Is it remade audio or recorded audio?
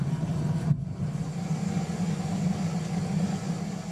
recorded